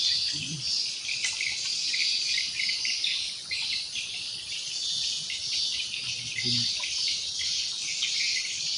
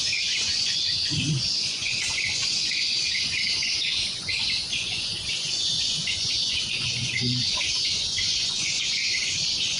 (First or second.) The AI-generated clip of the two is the second